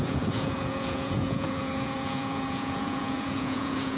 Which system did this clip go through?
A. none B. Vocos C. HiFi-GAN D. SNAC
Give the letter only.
B